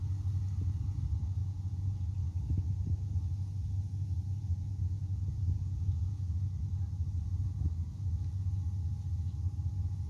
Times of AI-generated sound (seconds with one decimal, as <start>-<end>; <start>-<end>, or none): 1.4-2.0; 4.4-6.5